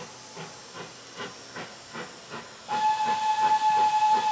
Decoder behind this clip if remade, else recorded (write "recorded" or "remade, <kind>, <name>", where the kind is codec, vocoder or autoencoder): recorded